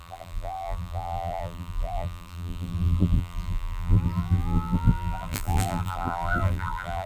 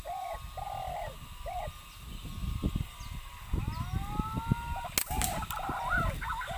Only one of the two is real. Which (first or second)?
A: second